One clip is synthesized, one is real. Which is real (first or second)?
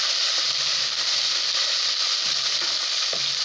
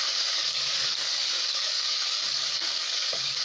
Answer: first